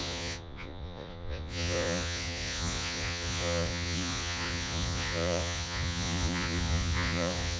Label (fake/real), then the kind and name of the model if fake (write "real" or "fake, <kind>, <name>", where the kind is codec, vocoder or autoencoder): fake, vocoder, Vocos